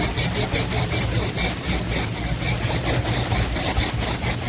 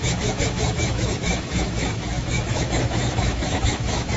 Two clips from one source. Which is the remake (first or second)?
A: second